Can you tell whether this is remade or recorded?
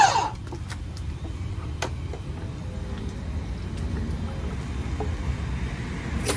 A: recorded